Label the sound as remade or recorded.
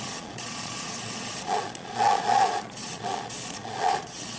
remade